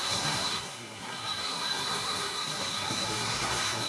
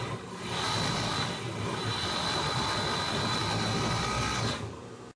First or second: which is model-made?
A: first